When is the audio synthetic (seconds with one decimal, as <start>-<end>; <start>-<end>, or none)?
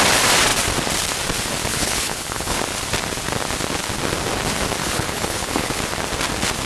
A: 1.7-2.6; 4.8-5.8